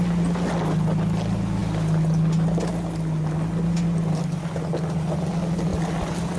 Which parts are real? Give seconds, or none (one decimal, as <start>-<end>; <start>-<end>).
0.0-6.4